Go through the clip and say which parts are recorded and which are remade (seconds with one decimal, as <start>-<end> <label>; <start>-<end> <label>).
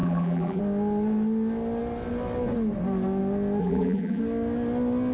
0.0-0.6 remade; 0.6-3.6 recorded; 3.6-4.2 remade; 4.2-5.1 recorded